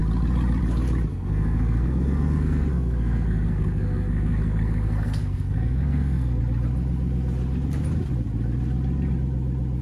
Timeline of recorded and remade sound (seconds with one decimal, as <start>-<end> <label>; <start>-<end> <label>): 0.0-1.1 recorded; 1.1-6.4 remade; 6.4-9.8 recorded